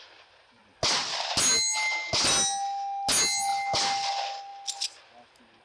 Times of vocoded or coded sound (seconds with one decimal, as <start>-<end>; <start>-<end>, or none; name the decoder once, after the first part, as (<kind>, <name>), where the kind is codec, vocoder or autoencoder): none